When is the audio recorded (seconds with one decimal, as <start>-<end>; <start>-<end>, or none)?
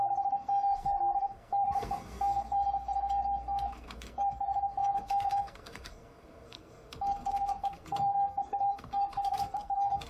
none